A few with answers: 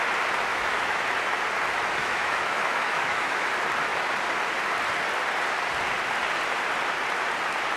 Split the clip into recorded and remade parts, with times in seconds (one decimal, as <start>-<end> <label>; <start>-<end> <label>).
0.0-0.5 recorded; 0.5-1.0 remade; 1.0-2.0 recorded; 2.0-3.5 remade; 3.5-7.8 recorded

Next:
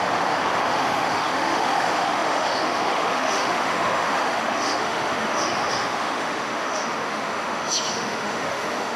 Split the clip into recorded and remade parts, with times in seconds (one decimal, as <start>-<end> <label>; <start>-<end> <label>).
0.0-9.0 remade

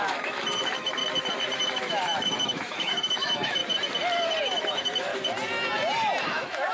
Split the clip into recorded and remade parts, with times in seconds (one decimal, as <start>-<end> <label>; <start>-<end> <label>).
0.0-1.0 remade; 1.0-1.6 recorded; 1.6-3.6 remade; 3.6-4.4 recorded; 4.4-5.1 remade; 5.1-6.2 recorded; 6.2-6.7 remade